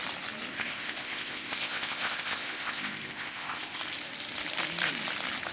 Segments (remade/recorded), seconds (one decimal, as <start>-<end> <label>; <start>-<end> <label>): 0.0-0.5 recorded; 0.5-3.8 remade; 3.8-5.5 recorded